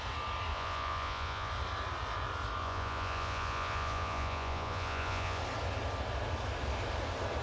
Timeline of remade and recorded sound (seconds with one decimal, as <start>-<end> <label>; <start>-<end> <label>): 0.0-0.5 recorded; 0.5-1.5 remade; 1.5-2.6 recorded; 2.6-5.4 remade; 5.4-7.4 recorded